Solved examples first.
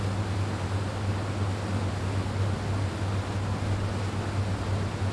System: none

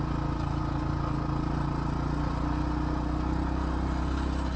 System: none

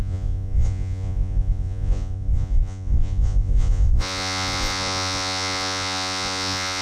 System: vocoder, Vocos